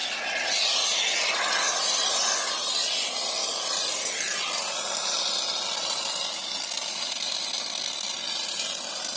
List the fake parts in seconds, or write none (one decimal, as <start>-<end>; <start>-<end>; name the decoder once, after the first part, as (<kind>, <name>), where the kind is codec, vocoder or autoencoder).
none